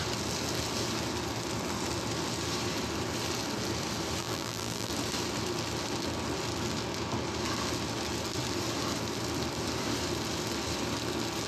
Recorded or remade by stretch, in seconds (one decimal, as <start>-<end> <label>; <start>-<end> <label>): 0.0-4.2 recorded; 4.2-4.9 remade; 4.9-11.5 recorded